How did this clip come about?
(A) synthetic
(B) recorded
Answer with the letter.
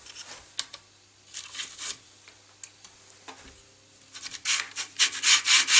B